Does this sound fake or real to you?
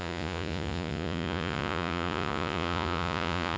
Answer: fake